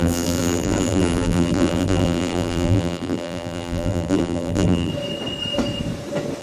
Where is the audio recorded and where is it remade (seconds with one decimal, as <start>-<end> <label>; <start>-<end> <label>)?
0.0-4.9 remade; 4.9-6.4 recorded